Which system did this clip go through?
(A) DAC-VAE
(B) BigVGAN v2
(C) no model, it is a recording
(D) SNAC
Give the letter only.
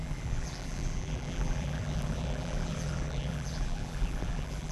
B